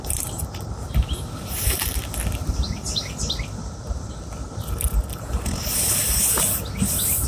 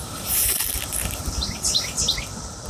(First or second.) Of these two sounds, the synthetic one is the second